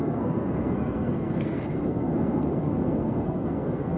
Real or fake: fake